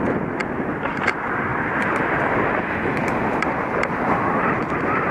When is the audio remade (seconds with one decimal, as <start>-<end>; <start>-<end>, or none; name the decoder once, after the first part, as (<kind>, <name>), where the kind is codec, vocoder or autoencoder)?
0.4-1.1 (vocoder, BigVGAN v2); 1.5-4.2